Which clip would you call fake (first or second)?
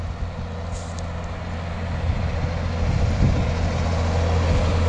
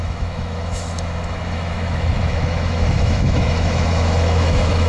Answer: second